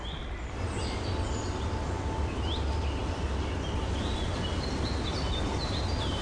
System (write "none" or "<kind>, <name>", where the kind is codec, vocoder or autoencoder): none